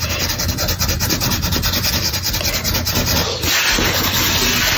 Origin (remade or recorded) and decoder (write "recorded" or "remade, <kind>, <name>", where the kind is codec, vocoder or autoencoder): recorded